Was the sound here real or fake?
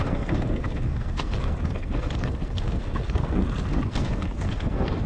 fake